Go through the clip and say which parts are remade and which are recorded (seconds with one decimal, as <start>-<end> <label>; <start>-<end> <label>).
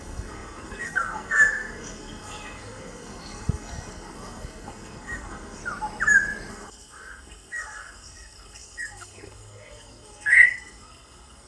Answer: 0.0-5.6 remade; 5.6-6.5 recorded; 6.5-11.5 remade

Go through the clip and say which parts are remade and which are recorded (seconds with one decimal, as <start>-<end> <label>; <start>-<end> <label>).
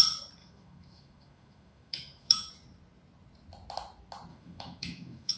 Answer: 0.0-0.4 recorded; 0.4-2.5 remade; 2.5-4.3 recorded; 4.3-5.4 remade